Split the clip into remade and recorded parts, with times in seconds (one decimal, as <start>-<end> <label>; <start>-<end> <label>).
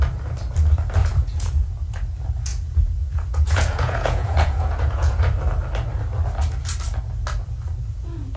0.0-1.0 recorded; 1.0-1.7 remade; 1.7-2.5 recorded; 2.5-5.2 remade; 5.2-8.4 recorded